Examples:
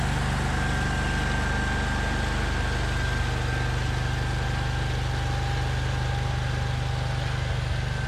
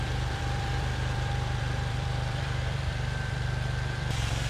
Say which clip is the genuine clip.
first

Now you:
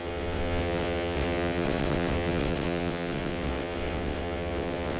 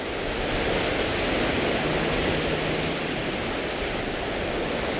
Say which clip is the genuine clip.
second